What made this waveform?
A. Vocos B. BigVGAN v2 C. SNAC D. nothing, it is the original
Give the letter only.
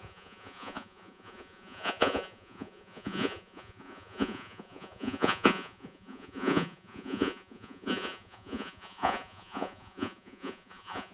A